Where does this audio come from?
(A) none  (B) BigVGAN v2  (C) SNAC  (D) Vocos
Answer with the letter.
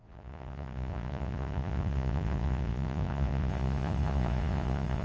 D